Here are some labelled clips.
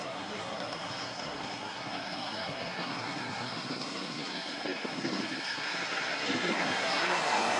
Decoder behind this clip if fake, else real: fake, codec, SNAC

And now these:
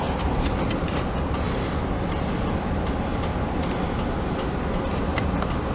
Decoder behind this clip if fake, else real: real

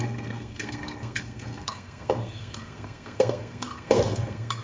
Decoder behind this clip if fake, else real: fake, codec, SNAC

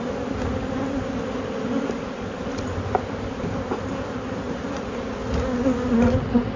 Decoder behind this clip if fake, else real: real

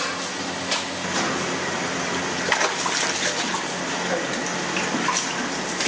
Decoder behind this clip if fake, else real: real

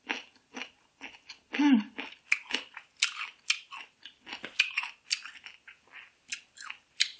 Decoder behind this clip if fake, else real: real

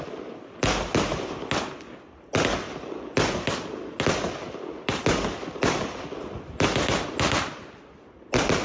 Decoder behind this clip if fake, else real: real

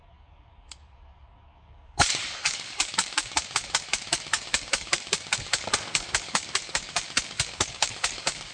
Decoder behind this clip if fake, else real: fake, codec, DAC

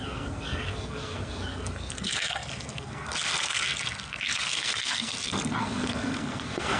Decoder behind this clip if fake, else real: fake, codec, SNAC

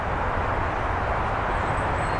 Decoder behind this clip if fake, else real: real